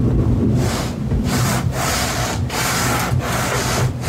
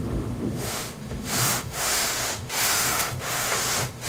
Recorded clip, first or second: first